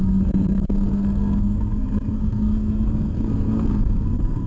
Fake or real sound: fake